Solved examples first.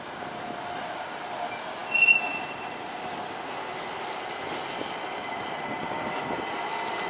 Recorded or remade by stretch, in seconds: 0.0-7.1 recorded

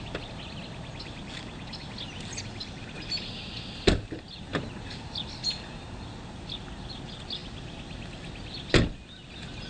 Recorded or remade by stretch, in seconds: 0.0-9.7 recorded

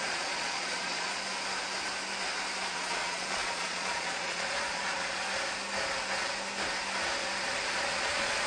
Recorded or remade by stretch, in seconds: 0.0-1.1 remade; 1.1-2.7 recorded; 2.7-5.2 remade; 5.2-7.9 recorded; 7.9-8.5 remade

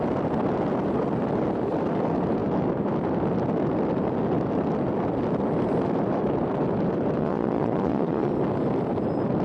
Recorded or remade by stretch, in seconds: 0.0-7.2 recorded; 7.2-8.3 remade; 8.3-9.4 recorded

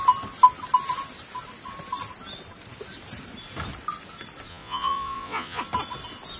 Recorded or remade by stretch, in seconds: 0.0-4.5 recorded; 4.5-5.6 remade; 5.6-6.4 recorded

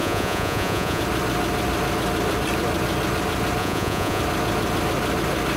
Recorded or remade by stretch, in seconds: 0.0-1.0 remade; 1.0-3.6 recorded; 3.6-4.2 remade; 4.2-5.6 recorded

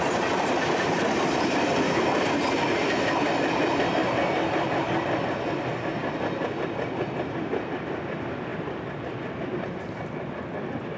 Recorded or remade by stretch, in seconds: 0.0-11.0 recorded